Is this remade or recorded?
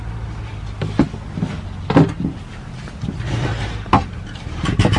recorded